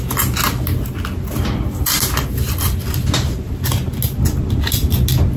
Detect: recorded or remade recorded